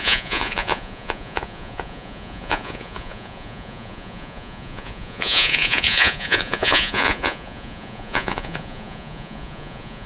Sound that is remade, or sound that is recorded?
remade